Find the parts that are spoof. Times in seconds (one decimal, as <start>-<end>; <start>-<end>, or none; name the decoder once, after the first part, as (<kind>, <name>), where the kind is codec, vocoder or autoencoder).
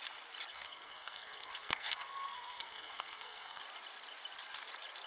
0.5-3.6 (codec, SNAC)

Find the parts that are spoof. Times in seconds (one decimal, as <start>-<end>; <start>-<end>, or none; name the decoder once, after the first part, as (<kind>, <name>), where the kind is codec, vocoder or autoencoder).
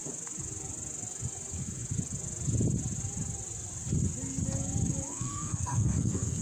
5.1-6.4 (codec, SNAC)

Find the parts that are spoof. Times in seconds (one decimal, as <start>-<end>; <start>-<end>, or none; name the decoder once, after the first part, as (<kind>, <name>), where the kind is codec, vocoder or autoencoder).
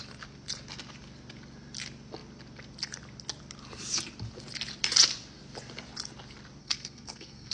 6.6-7.5 (codec, SNAC)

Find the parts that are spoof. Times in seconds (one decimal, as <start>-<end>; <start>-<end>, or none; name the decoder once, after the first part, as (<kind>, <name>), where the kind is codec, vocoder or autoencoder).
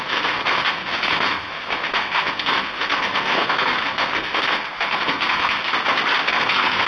0.0-5.6 (codec, SNAC); 6.3-6.9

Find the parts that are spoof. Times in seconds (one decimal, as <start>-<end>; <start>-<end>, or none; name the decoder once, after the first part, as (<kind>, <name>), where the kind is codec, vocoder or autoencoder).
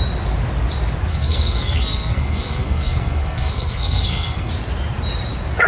1.1-4.5 (codec, SNAC)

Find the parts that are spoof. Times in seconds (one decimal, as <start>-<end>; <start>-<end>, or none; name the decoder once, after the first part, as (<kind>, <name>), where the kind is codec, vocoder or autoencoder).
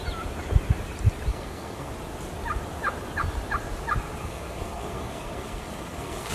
1.3-1.9 (codec, SNAC); 4.2-6.3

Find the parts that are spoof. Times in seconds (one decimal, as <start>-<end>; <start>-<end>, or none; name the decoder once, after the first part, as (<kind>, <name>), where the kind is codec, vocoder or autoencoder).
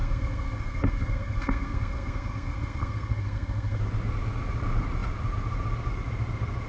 0.0-3.8 (codec, SNAC)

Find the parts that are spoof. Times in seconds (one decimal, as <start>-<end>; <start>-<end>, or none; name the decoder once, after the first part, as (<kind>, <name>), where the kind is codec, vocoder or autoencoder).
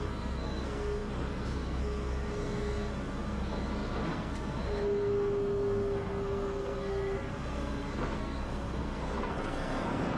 0.0-10.2 (codec, SNAC)